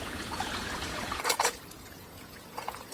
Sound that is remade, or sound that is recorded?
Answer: remade